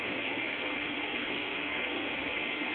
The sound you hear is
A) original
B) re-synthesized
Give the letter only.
B